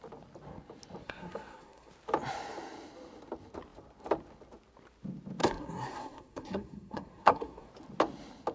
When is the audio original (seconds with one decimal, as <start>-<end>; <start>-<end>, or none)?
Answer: 0.0-1.0; 1.9-5.4; 7.7-8.5